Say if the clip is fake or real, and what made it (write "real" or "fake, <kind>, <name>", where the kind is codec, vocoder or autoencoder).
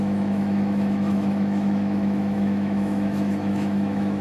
fake, autoencoder, DAC-VAE